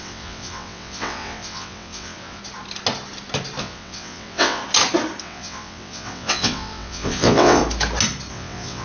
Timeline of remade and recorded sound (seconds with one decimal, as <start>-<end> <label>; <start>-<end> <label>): 0.0-2.4 remade; 2.4-3.6 recorded; 3.6-4.6 remade; 4.6-5.2 recorded; 5.2-7.6 remade; 7.6-8.3 recorded; 8.3-8.8 remade

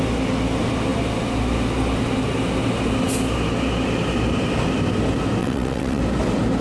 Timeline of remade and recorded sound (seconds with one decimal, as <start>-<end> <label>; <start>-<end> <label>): 0.0-5.4 recorded; 5.4-6.0 remade; 6.0-6.6 recorded